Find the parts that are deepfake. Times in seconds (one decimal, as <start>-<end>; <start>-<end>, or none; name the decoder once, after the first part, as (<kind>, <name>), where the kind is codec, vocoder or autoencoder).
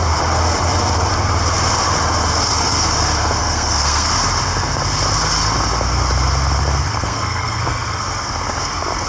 3.4-4.1 (codec, SNAC); 6.9-8.3